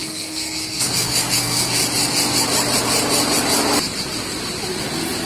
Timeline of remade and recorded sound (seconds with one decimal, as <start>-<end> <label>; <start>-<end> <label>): 0.0-1.8 remade; 1.8-5.3 recorded